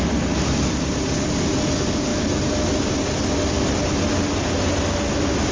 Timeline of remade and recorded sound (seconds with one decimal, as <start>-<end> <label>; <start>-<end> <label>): 0.0-1.3 remade; 1.3-5.5 recorded